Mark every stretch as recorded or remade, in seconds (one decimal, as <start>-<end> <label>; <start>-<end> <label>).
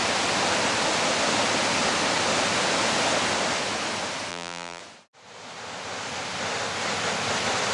0.0-4.3 recorded; 4.3-4.8 remade; 4.8-7.7 recorded